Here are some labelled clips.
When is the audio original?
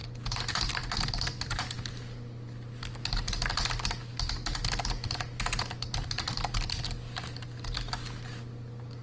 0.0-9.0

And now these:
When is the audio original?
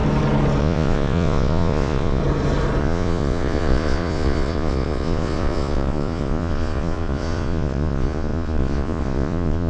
0.0-0.6; 2.2-2.8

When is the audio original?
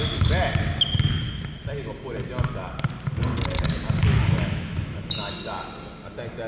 0.0-4.2; 5.3-6.5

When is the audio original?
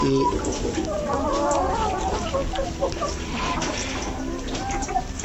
0.0-5.2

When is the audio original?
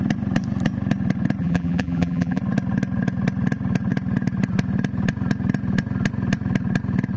0.0-1.4; 2.4-7.2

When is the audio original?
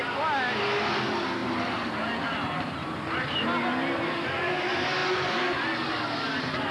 0.0-1.4; 3.0-6.7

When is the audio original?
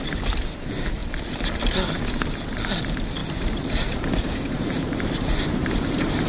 0.0-3.2